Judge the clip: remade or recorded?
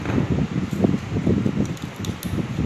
recorded